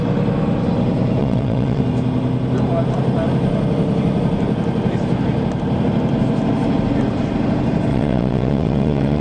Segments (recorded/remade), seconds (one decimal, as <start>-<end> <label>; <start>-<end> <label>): 0.0-1.2 recorded; 1.2-1.8 remade; 1.8-7.9 recorded; 7.9-9.2 remade